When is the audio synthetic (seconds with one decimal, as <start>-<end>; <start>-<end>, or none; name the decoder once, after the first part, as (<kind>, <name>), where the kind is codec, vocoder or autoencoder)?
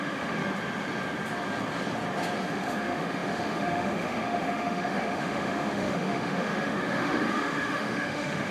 0.0-0.4 (autoencoder, DAC-VAE); 2.5-8.5